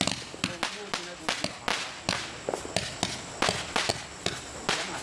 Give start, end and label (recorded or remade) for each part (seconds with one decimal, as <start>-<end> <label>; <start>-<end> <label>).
0.0-5.0 recorded